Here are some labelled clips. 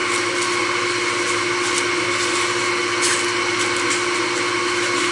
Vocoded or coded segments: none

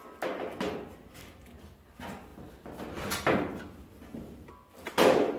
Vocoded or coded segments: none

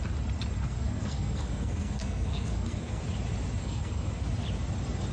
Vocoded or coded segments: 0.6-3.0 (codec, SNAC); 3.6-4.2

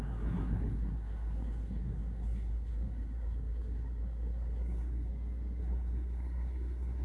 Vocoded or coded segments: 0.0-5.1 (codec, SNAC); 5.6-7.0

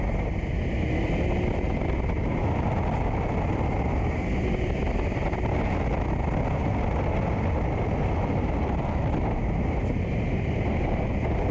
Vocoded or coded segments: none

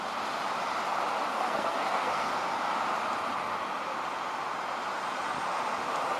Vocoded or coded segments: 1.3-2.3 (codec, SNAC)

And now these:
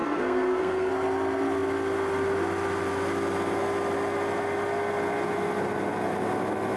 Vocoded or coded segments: 0.0-0.9 (codec, SNAC)